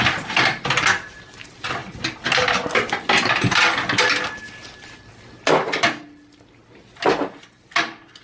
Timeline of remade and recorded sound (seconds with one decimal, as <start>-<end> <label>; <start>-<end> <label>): 0.0-8.2 recorded